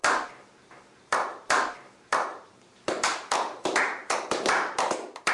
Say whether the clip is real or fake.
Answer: fake